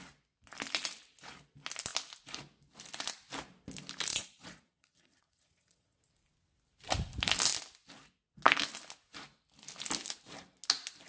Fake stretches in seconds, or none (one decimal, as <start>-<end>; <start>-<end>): 4.1-6.0

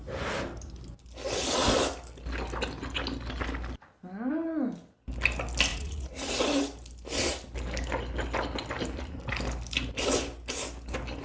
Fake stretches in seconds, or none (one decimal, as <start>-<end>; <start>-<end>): 5.7-6.3

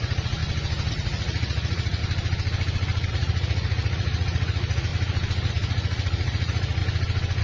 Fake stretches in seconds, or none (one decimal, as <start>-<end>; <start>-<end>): 0.0-0.4; 0.9-2.0; 3.1-4.9; 5.5-6.8

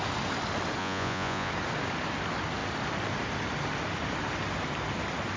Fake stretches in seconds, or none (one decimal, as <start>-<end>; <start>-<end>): 0.8-1.5

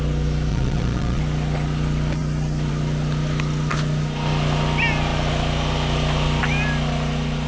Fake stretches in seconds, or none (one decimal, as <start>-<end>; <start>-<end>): 0.5-1.2

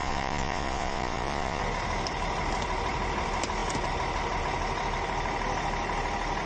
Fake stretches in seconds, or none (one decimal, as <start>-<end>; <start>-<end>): 0.0-1.6